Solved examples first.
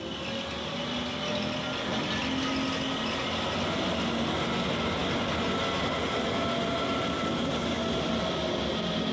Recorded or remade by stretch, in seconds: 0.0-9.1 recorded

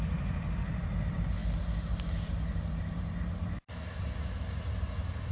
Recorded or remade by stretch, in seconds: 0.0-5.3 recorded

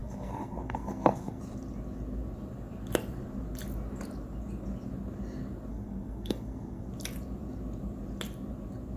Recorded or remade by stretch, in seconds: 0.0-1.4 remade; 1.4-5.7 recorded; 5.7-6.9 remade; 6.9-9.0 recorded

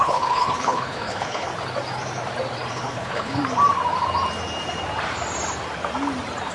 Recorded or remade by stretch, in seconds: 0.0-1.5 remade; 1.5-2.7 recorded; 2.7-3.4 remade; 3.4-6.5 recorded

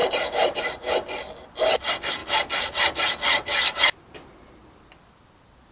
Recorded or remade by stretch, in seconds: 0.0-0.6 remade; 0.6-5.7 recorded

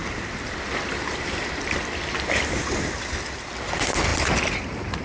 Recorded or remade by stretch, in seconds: 0.0-5.0 remade